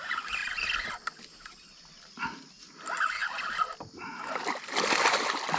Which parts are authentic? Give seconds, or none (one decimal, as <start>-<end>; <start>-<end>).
0.0-5.6